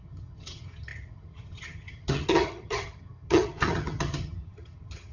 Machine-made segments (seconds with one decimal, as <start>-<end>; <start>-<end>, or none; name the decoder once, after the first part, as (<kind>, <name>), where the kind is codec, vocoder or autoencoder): 0.0-5.1 (vocoder, HiFi-GAN)